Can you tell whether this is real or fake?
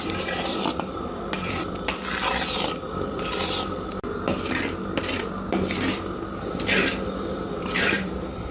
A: fake